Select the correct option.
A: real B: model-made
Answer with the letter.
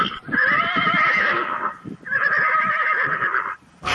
A